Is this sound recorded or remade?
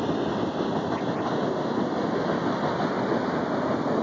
recorded